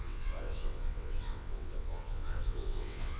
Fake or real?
fake